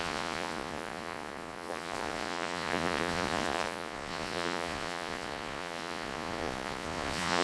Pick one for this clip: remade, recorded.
remade